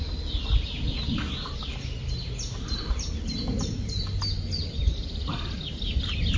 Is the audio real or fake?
real